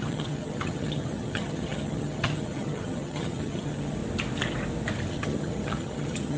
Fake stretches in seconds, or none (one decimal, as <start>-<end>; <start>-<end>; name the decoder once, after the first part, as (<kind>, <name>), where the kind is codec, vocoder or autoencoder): 0.0-4.0 (vocoder, HiFi-GAN); 5.1-6.4